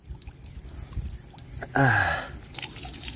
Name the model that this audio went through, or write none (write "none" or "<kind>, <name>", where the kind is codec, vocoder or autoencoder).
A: none